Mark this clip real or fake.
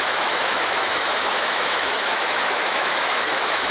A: fake